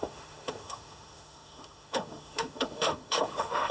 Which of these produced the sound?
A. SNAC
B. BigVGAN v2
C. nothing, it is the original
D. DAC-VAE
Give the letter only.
D